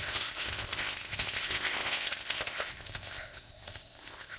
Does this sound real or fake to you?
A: fake